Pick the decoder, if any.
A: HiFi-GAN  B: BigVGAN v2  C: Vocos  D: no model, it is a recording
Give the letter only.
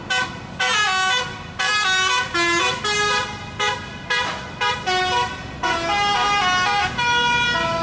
D